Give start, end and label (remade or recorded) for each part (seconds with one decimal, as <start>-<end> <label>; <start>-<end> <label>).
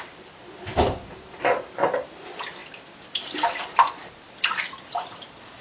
0.0-5.6 remade